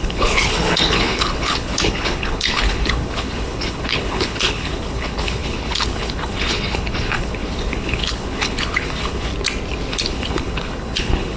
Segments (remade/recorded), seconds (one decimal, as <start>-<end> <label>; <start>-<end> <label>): 0.0-9.3 remade; 9.3-9.9 recorded; 9.9-11.4 remade